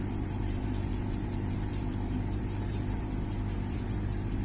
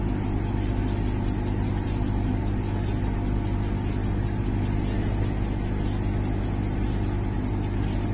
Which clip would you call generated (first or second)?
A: first